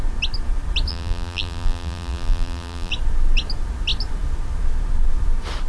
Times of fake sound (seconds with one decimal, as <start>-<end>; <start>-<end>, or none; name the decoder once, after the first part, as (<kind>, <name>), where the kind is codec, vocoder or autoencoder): 0.9-2.9 (vocoder, BigVGAN v2)